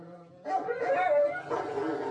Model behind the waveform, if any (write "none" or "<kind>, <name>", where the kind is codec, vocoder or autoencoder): none